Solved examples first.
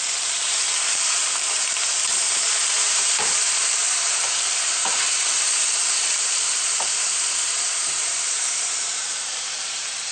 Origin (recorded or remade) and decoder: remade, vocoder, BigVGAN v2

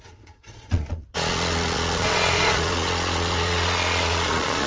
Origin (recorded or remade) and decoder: remade, vocoder, Vocos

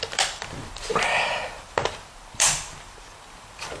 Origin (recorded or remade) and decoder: remade, vocoder, BigVGAN v2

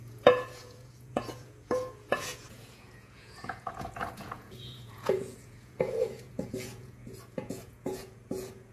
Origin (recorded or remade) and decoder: remade, vocoder, Vocos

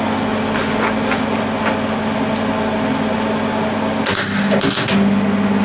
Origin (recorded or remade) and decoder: recorded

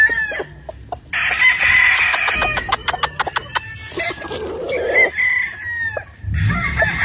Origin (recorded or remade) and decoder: recorded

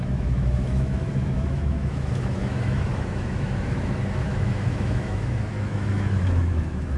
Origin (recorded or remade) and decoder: remade, autoencoder, DAC-VAE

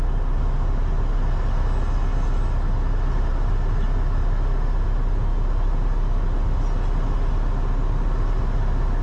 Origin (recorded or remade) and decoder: recorded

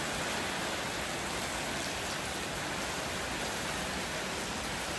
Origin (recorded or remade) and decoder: recorded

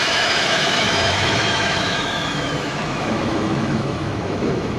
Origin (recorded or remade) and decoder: remade, autoencoder, DAC-VAE